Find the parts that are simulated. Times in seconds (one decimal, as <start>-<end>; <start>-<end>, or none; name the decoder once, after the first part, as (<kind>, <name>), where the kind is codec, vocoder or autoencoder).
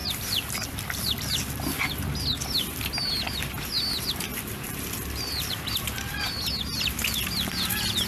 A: 0.0-1.2 (vocoder, BigVGAN v2); 4.3-6.9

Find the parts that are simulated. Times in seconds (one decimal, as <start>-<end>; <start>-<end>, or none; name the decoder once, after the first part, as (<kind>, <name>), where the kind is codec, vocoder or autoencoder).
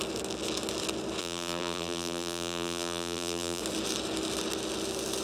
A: 1.2-3.6 (vocoder, BigVGAN v2)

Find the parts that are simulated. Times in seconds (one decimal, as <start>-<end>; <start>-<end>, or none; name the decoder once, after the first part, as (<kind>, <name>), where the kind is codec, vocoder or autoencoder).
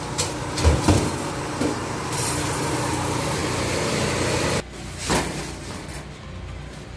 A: none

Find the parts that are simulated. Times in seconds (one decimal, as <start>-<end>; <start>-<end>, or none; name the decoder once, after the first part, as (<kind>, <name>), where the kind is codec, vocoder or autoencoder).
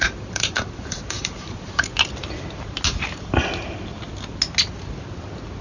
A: 0.0-1.9 (vocoder, BigVGAN v2)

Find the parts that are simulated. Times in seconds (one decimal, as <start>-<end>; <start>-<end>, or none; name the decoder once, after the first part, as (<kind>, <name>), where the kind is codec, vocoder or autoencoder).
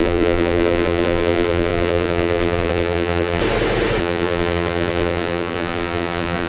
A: 0.0-3.4 (vocoder, BigVGAN v2); 4.0-6.5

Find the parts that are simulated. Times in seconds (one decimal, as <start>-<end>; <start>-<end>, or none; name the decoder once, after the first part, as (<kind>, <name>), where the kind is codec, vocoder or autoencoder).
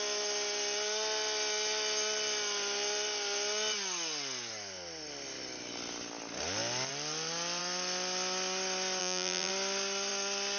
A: 9.0-9.5 (vocoder, BigVGAN v2)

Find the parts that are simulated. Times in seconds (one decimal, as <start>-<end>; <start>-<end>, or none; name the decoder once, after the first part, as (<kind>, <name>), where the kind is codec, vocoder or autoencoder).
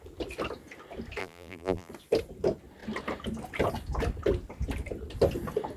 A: 1.2-1.9 (vocoder, BigVGAN v2)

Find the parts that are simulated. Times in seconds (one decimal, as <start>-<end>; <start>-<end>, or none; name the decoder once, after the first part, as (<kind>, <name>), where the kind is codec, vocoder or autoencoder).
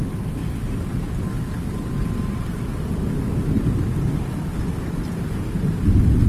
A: none